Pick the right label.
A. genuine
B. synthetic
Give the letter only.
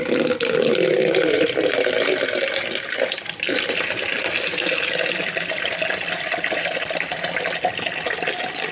A